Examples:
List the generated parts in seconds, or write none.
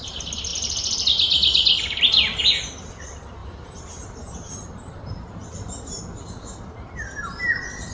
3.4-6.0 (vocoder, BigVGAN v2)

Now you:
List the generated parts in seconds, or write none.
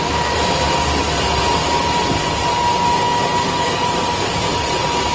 0.0-1.0 (vocoder, BigVGAN v2); 3.3-5.1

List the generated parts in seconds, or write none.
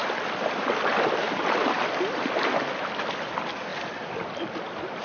0.0-1.6 (vocoder, BigVGAN v2); 3.7-4.5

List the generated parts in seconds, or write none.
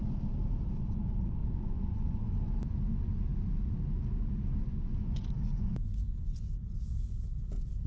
1.4-2.3 (vocoder, Vocos); 4.7-6.4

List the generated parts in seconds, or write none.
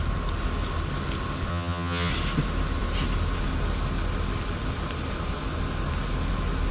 1.5-2.1 (vocoder, HiFi-GAN)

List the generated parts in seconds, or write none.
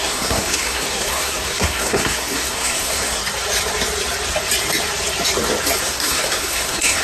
0.0-3.2 (codec, SNAC); 5.8-7.0